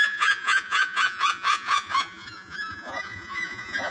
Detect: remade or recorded remade